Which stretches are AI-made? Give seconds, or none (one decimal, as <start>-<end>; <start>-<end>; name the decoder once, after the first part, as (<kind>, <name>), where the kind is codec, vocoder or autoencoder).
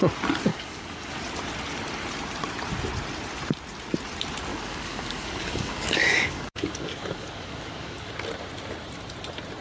0.5-1.1 (codec, DAC); 4.5-8.1